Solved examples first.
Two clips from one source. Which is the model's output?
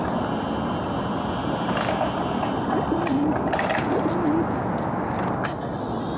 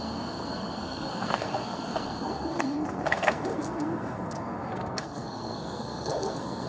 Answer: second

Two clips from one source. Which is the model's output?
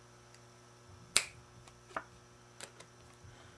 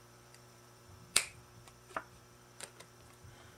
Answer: second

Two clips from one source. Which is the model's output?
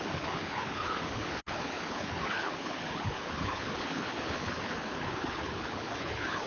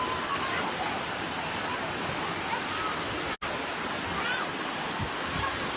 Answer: first